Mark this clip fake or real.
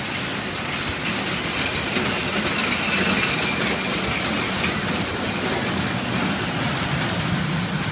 real